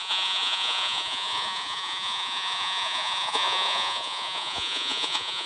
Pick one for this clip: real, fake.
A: fake